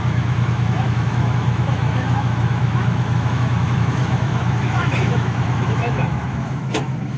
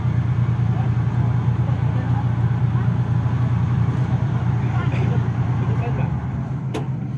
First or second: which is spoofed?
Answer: first